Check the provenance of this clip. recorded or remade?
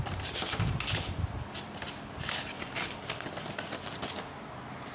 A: recorded